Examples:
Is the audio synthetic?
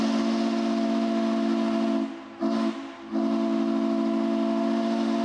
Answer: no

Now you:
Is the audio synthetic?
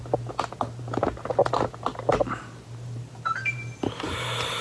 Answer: no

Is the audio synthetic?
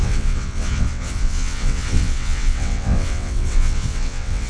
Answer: yes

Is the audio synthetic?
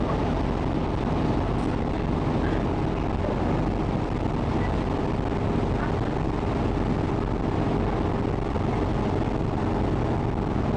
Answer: no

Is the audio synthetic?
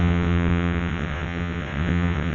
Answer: yes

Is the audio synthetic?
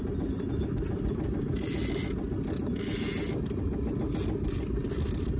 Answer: no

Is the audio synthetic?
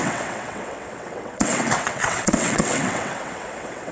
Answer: yes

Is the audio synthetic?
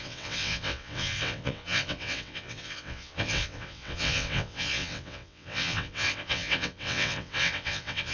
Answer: yes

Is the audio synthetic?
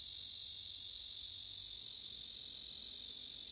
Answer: no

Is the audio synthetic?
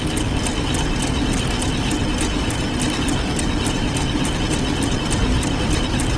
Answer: no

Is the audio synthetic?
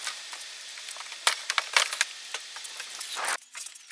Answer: no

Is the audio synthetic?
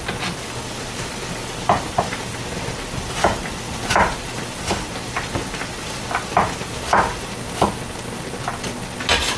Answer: no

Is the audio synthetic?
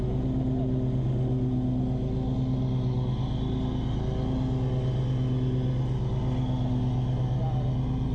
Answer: no